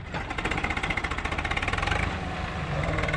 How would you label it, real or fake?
real